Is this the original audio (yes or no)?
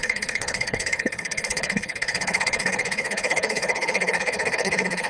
no